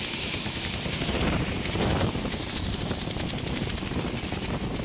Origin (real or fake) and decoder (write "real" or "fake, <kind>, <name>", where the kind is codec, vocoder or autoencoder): real